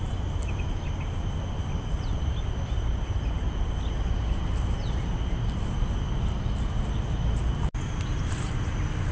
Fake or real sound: real